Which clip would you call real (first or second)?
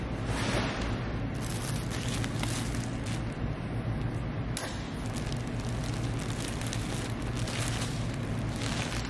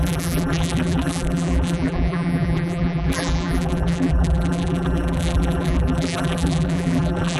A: first